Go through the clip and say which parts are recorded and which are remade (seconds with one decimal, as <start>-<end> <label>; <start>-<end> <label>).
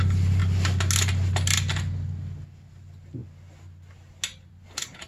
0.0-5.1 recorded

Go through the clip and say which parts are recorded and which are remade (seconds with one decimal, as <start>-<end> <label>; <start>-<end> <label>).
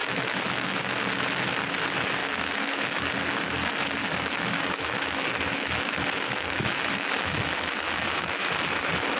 0.0-0.8 remade; 0.8-2.2 recorded; 2.2-3.1 remade; 3.1-4.0 recorded; 4.0-8.5 remade; 8.5-9.2 recorded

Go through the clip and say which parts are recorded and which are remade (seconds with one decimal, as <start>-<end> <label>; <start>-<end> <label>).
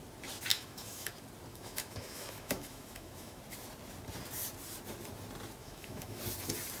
0.0-0.5 recorded; 0.5-1.1 remade; 1.1-1.5 recorded; 1.5-3.4 remade; 3.4-5.6 recorded; 5.6-6.2 remade; 6.2-6.8 recorded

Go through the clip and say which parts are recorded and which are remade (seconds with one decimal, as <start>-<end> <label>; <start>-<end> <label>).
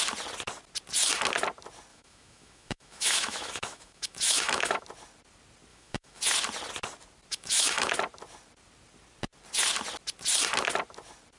0.0-1.9 recorded; 1.9-4.8 remade; 4.8-5.7 recorded; 5.7-6.2 remade; 6.2-7.3 recorded; 7.3-7.9 remade; 7.9-11.4 recorded